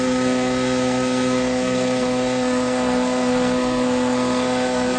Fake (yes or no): yes